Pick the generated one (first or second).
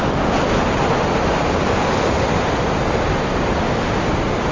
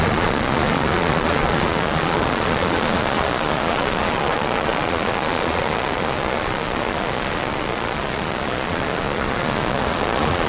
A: second